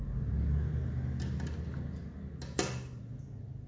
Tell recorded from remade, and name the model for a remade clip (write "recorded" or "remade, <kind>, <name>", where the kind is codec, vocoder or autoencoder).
recorded